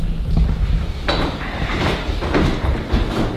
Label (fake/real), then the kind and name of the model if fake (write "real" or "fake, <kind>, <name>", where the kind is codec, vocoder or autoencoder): real